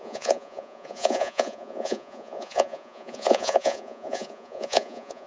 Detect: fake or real fake